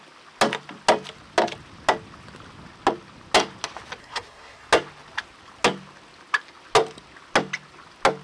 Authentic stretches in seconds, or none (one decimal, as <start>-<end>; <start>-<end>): 0.0-4.0; 4.7-8.2